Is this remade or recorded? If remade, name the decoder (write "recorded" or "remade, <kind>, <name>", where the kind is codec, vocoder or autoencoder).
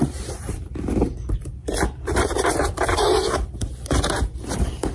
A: remade, vocoder, BigVGAN v2